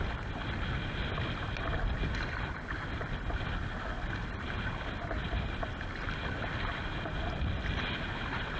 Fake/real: real